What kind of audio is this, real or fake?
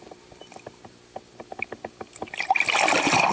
real